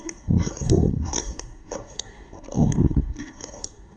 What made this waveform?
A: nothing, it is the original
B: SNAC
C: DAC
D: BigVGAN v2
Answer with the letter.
B